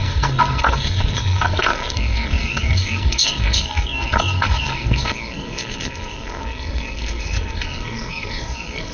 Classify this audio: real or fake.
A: fake